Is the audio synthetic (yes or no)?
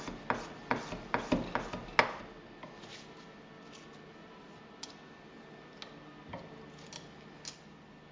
no